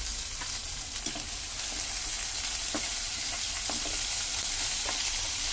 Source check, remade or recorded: recorded